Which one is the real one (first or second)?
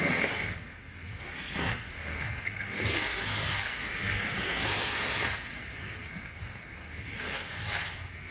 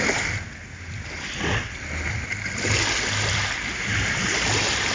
second